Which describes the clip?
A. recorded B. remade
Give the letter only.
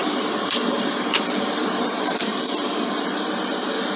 B